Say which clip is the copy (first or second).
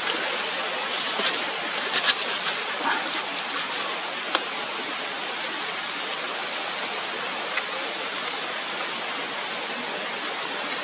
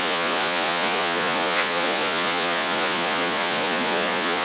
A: second